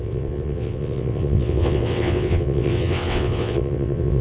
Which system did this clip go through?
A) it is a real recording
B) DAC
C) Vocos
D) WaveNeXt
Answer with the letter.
D